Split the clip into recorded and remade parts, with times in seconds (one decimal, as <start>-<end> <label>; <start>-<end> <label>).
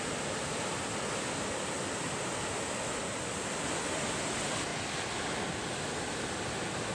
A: 0.0-6.9 recorded